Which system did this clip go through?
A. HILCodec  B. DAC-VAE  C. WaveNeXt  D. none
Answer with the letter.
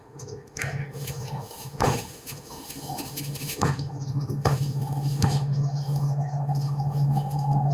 B